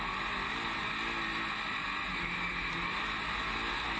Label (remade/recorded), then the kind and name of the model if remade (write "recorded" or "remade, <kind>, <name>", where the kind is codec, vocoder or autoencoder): recorded